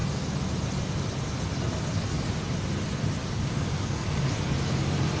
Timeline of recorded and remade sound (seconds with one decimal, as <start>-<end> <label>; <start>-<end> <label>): 0.0-3.2 recorded; 3.2-4.3 remade; 4.3-5.2 recorded